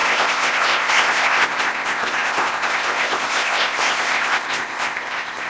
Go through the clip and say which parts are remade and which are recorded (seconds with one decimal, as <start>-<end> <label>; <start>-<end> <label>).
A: 0.0-5.5 remade